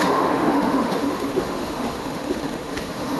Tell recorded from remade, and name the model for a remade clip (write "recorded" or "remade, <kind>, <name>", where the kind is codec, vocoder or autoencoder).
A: remade, autoencoder, DAC-VAE